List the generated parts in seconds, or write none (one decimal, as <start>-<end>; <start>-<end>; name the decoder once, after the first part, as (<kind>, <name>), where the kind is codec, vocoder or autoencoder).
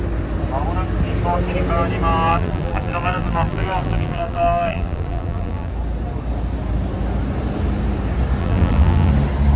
2.3-5.7 (vocoder, BigVGAN v2); 8.4-9.1